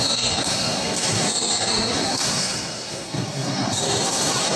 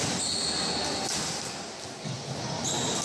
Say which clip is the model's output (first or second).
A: first